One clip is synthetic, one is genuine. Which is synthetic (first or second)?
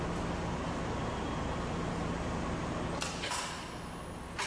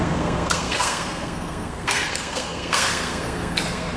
second